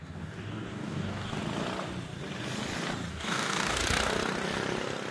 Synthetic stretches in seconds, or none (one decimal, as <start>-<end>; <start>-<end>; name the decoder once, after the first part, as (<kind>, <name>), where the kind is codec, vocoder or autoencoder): 0.0-1.4 (codec, DAC); 3.1-3.8